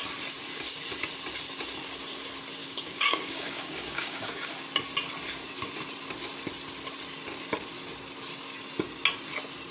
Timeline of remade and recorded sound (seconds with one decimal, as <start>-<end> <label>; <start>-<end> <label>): 0.0-2.6 recorded; 2.6-4.5 remade; 4.5-9.7 recorded